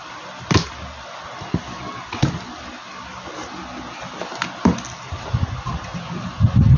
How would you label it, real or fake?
real